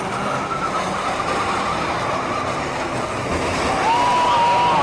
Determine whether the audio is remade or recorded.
recorded